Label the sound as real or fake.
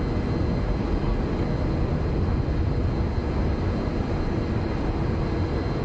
real